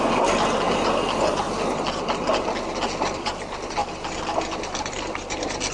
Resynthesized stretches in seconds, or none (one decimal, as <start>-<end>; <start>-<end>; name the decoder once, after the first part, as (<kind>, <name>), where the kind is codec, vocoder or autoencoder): none